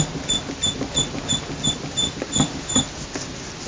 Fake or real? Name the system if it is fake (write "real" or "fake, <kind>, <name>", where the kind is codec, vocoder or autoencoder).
real